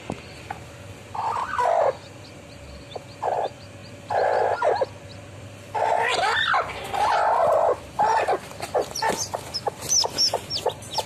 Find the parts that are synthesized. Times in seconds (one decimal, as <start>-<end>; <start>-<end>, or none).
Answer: none